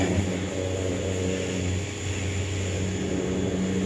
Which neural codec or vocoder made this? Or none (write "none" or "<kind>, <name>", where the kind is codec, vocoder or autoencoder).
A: none